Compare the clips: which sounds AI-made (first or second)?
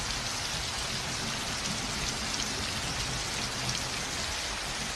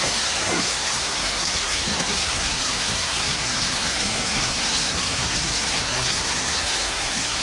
second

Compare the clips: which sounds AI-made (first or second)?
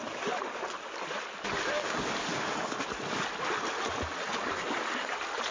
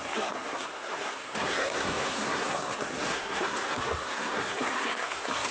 second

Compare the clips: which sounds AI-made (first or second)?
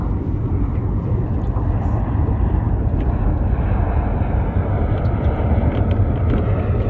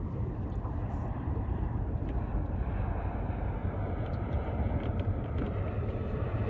second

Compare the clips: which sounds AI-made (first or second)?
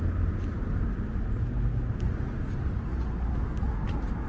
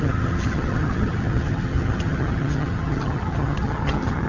second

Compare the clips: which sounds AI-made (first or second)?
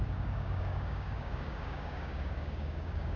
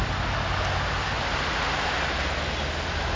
first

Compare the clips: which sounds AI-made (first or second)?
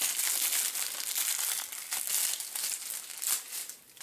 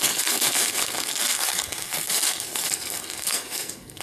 second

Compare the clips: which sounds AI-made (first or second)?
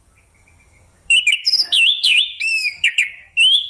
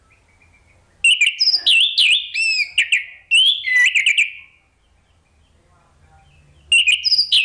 first